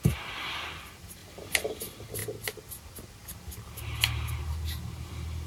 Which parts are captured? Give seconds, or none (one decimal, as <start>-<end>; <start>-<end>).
0.0-5.5